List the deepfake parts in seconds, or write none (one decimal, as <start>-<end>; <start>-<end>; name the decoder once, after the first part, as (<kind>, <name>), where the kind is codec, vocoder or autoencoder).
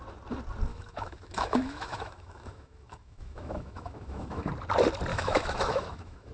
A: 0.7-4.5 (autoencoder, DAC-VAE); 5.1-6.3